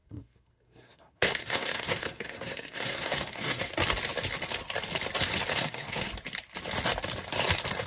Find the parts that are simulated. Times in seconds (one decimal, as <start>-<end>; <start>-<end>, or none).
0.0-3.7; 5.5-6.1